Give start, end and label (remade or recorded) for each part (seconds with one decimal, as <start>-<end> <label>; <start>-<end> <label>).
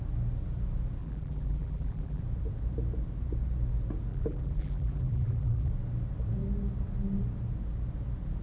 0.0-1.0 recorded; 1.0-2.2 remade; 2.2-4.1 recorded; 4.1-5.7 remade; 5.7-8.4 recorded